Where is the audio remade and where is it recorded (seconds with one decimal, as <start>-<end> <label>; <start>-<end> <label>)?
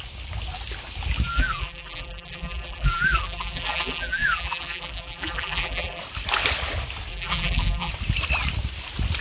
0.0-1.3 recorded; 1.3-6.0 remade; 6.0-7.1 recorded; 7.1-7.9 remade; 7.9-9.2 recorded